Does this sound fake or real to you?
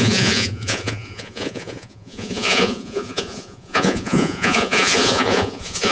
fake